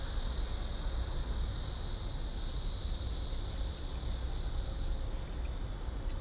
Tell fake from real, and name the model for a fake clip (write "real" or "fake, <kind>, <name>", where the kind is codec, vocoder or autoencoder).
real